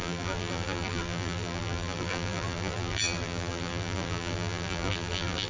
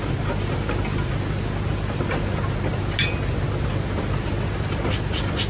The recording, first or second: second